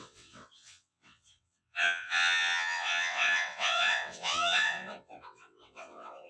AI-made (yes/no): yes